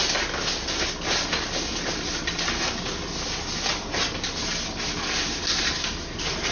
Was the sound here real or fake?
real